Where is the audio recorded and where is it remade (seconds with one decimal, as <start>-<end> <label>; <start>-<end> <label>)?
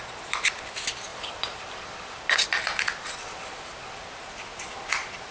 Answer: 0.0-1.1 recorded; 1.1-1.6 remade; 1.6-5.3 recorded